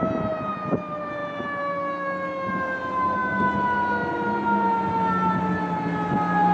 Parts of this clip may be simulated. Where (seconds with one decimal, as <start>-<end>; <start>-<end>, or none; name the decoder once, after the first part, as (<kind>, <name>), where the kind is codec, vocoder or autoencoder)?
none